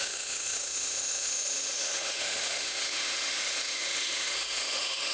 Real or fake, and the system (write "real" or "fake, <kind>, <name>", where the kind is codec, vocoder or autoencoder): fake, autoencoder, DAC-VAE